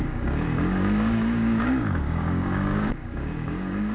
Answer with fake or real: fake